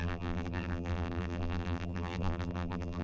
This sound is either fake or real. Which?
fake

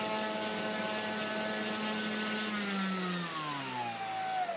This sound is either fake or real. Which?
real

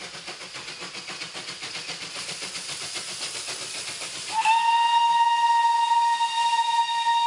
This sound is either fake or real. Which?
real